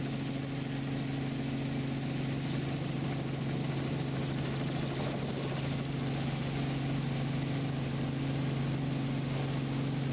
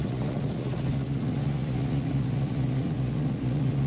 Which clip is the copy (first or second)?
second